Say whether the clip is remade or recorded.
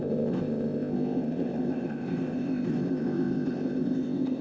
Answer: remade